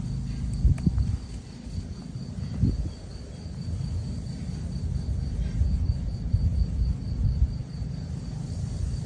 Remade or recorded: recorded